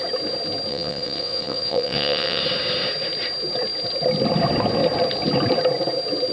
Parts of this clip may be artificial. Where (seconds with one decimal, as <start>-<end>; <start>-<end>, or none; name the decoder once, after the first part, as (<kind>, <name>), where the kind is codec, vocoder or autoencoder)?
0.7-2.4 (vocoder, WaveNeXt)